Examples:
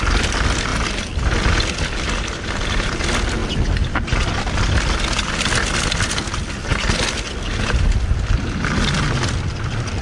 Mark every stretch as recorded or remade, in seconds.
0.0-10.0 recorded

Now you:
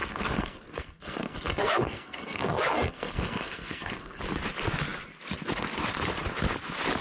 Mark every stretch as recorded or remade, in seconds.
0.0-4.2 remade; 4.2-7.0 recorded